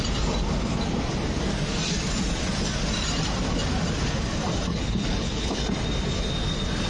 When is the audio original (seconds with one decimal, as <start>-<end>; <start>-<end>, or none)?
0.0-4.7; 5.6-6.9